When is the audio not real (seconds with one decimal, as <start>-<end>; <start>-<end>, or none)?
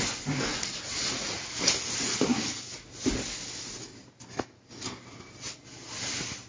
0.5-1.5